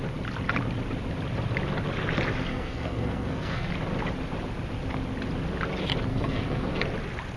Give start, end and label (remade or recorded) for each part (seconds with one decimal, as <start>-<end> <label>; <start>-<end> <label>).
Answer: 0.0-2.5 recorded; 2.5-3.7 remade; 3.7-6.1 recorded; 6.1-6.8 remade; 6.8-7.4 recorded